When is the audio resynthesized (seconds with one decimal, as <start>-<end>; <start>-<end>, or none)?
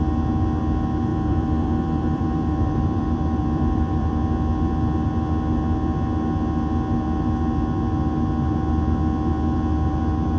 1.1-4.2